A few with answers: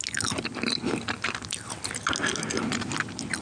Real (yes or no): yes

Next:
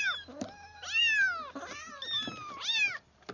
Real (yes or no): yes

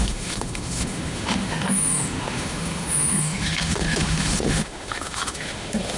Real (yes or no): no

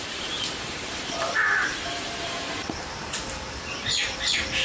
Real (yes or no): no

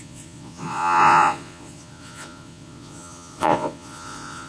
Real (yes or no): no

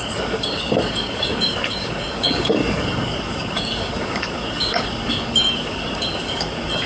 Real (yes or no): no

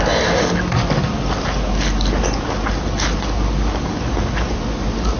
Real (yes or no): yes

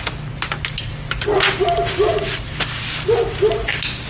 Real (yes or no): yes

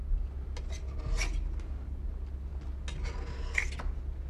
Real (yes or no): yes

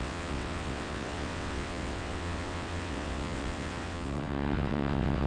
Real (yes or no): no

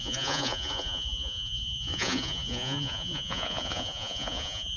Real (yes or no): no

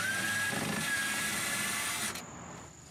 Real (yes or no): yes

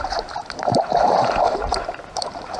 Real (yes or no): no